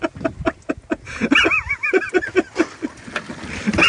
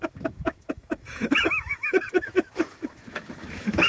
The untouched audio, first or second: first